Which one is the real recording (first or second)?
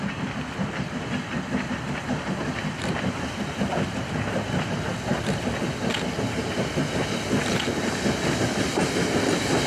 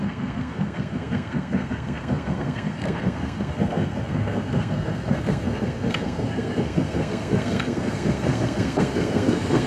first